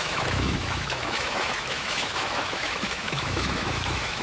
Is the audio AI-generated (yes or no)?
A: yes